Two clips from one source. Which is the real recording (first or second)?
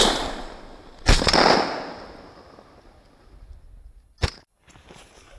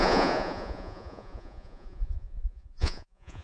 first